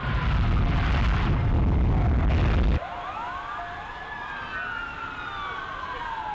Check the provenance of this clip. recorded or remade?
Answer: recorded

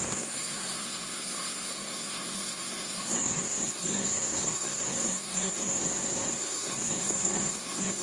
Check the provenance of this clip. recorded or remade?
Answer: remade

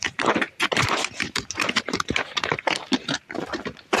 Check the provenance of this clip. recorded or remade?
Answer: remade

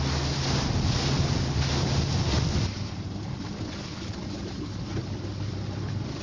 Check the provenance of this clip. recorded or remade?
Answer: recorded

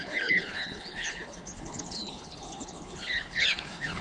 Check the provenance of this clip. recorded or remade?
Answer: remade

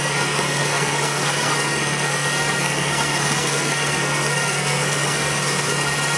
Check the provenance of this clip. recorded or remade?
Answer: remade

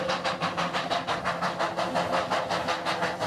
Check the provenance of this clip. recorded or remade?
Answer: recorded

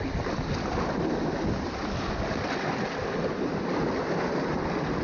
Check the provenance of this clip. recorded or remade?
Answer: recorded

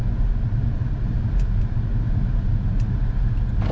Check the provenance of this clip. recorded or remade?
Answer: recorded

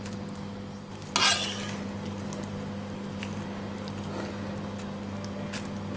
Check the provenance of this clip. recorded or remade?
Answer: recorded